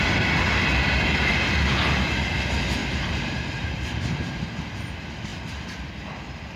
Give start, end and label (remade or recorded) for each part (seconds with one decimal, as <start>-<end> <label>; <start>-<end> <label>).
0.0-2.8 recorded; 2.8-4.6 remade; 4.6-6.6 recorded